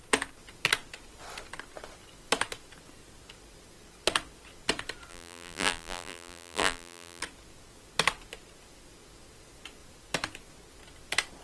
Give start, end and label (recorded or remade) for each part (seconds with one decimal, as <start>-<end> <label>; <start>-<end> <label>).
0.0-5.1 recorded; 5.1-7.2 remade; 7.2-11.4 recorded